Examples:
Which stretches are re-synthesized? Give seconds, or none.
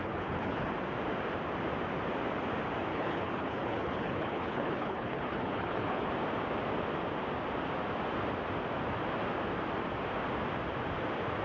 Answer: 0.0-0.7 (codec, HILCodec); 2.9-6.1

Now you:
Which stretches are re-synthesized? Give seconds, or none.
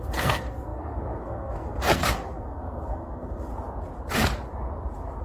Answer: 0.0-3.5 (codec, SNAC)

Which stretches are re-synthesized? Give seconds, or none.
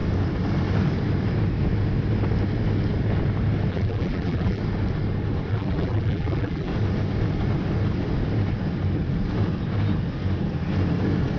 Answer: 3.7-4.6 (vocoder, BigVGAN v2); 5.5-6.7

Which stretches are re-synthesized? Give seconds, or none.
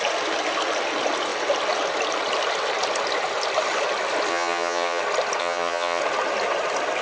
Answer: 4.3-5.0 (vocoder, HiFi-GAN); 5.4-6.0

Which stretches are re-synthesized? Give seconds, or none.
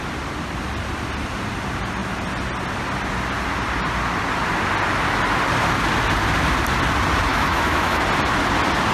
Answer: 7.3-8.0 (autoencoder, DAC-VAE)